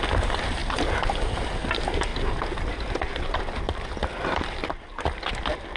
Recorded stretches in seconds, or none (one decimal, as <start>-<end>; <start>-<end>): 0.0-5.8